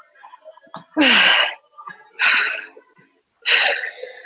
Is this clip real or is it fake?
real